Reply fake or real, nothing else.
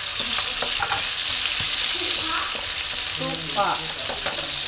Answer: real